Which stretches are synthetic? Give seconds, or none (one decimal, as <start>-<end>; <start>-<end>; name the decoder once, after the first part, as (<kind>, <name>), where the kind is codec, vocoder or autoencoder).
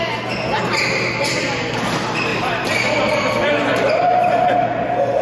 2.3-4.0 (vocoder, BigVGAN v2)